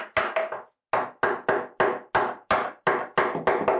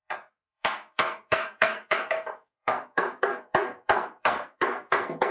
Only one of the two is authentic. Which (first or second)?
first